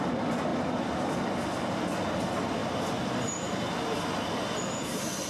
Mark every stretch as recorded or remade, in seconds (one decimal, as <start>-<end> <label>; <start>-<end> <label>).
0.0-0.5 recorded; 0.5-1.4 remade; 1.4-5.3 recorded